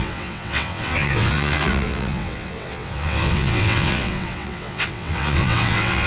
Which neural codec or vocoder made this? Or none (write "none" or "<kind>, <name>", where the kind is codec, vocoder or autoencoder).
vocoder, WaveNeXt